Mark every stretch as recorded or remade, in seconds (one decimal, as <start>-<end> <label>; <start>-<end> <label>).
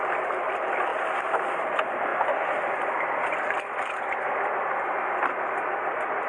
0.0-6.3 recorded